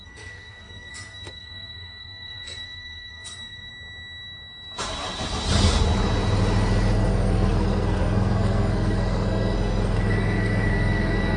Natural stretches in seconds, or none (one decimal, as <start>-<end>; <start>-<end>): 3.7-7.1

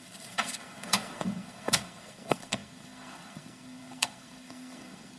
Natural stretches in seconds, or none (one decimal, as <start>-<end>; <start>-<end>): none

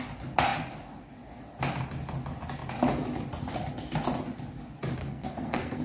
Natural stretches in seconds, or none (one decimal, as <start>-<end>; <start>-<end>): 0.0-5.0

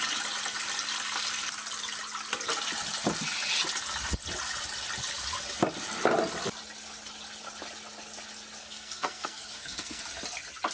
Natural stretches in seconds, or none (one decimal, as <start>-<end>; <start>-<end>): 0.0-8.6; 10.0-10.7

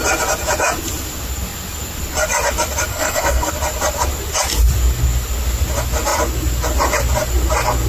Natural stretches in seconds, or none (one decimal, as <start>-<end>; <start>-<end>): 0.0-2.9; 3.5-7.9